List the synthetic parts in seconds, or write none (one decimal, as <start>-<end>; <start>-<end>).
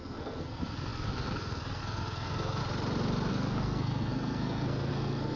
0.0-2.6; 3.3-5.4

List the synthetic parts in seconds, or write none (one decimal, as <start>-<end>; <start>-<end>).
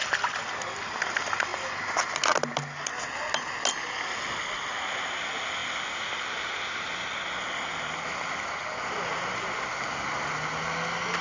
none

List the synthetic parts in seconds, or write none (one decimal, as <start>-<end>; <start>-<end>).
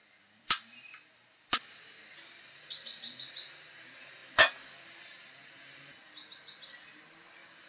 none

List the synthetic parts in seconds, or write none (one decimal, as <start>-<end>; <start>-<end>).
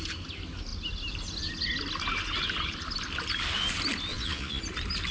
4.1-4.6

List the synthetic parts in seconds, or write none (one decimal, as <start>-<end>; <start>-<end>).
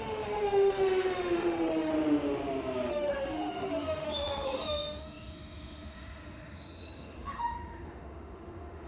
0.0-1.9; 2.9-8.9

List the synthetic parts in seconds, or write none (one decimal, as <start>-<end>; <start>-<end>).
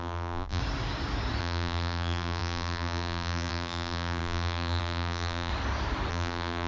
0.0-0.6; 1.4-5.5; 6.1-6.7